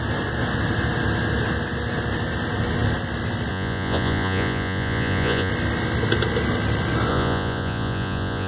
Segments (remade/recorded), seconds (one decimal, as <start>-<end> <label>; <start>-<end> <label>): 0.0-3.5 recorded; 3.5-5.5 remade; 5.5-7.1 recorded; 7.1-8.5 remade